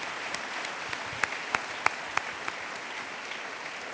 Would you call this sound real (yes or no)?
yes